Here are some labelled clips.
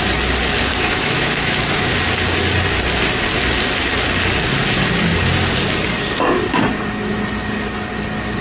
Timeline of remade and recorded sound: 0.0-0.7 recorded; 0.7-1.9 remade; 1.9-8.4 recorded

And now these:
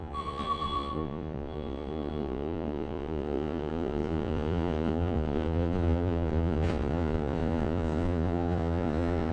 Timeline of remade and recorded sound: 0.0-9.3 remade

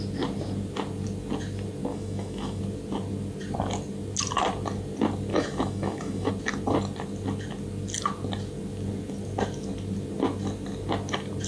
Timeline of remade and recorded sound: 0.0-1.9 recorded; 1.9-2.6 remade; 2.6-5.3 recorded; 5.3-6.3 remade; 6.3-11.5 recorded

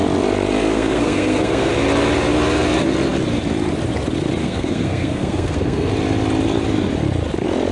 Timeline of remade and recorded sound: 0.0-0.7 recorded; 0.7-1.7 remade; 1.7-4.4 recorded; 4.4-5.9 remade; 5.9-7.7 recorded

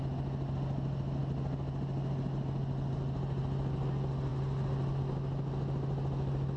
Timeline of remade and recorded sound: 0.0-6.6 recorded

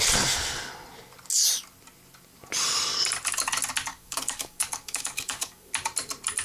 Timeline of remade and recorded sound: 0.0-3.9 recorded; 3.9-5.7 remade; 5.7-6.4 recorded

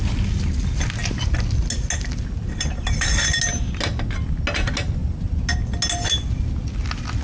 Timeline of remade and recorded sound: 0.0-7.2 recorded